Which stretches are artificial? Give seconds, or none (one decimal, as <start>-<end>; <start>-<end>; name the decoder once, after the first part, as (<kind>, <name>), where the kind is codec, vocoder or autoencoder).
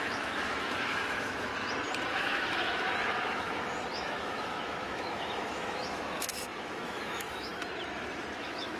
0.0-1.5 (autoencoder, DAC-VAE); 2.1-7.5; 8.4-8.8